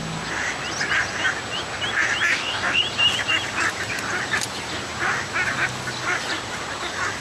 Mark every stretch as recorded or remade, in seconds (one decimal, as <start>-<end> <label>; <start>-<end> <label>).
0.0-2.3 recorded; 2.3-2.8 remade; 2.8-7.2 recorded